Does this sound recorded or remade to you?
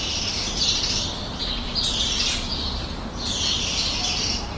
recorded